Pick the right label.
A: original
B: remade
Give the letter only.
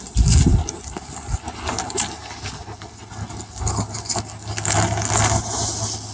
A